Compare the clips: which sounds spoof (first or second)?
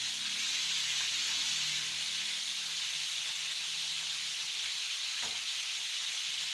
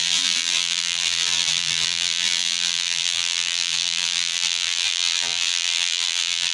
second